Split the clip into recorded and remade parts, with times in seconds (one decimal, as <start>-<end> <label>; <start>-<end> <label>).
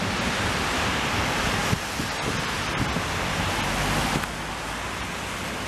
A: 0.0-5.7 recorded